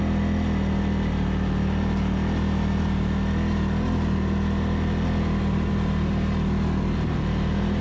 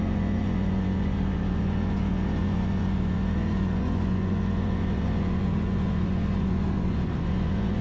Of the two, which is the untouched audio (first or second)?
first